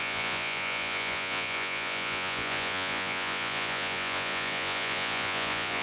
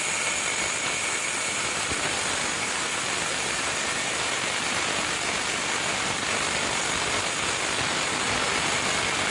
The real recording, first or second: second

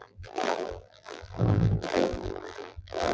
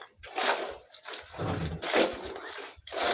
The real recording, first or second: second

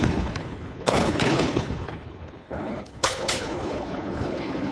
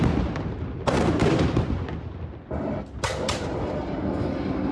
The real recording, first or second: second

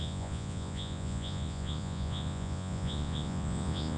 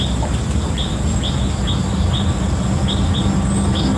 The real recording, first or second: second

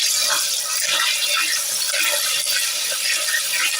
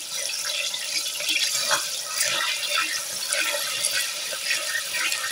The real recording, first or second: first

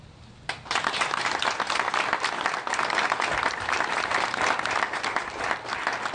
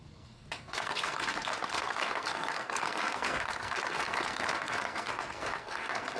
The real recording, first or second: first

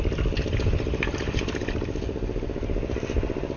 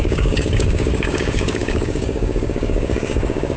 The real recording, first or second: first